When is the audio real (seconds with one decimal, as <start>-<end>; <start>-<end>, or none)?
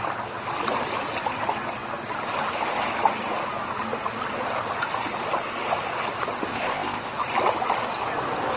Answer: 0.0-6.5; 7.1-8.6